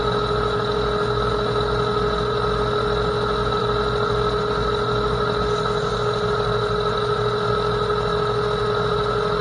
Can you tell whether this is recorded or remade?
recorded